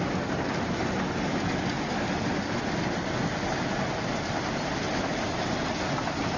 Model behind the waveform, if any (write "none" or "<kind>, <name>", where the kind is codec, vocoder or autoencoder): none